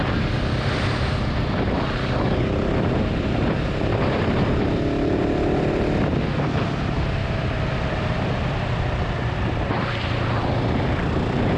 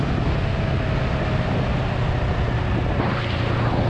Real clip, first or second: second